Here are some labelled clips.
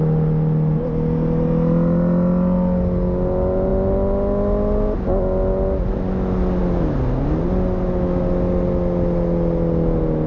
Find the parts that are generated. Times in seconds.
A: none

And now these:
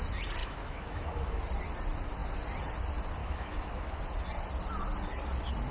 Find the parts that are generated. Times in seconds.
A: 0.4-1.4 (autoencoder, DAC-VAE); 3.2-4.0